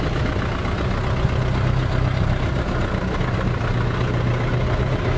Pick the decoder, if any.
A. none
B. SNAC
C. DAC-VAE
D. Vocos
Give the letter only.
A